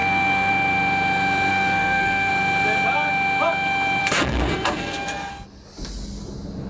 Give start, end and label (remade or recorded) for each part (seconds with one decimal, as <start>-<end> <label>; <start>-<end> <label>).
0.0-0.5 remade; 0.5-1.5 recorded; 1.5-2.3 remade; 2.3-4.0 recorded; 4.0-5.3 remade; 5.3-6.7 recorded